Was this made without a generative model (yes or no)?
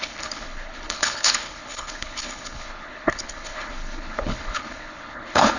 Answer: no